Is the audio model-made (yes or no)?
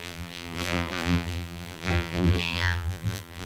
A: yes